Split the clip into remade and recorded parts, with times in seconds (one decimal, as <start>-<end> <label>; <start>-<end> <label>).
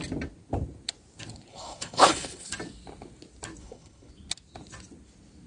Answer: 0.0-1.5 recorded; 1.5-2.5 remade; 2.5-3.6 recorded; 3.6-4.1 remade; 4.1-5.5 recorded